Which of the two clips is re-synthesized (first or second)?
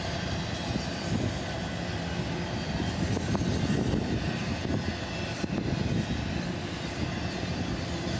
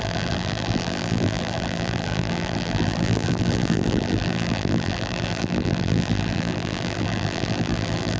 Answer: second